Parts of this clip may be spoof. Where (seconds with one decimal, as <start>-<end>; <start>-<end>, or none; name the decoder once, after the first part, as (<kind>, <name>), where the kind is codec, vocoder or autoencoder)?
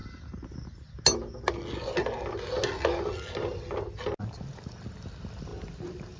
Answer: none